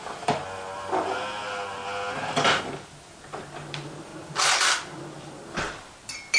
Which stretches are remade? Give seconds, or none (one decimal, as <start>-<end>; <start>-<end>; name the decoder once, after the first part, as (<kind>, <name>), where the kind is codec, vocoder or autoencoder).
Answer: none